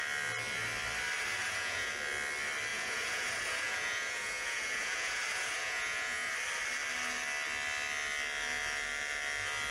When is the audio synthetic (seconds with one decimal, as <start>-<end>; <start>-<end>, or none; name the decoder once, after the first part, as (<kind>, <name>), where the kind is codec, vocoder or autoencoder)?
1.4-1.9 (vocoder, Vocos); 2.7-6.3